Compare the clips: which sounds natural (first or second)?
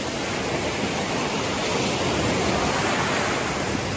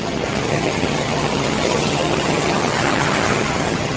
first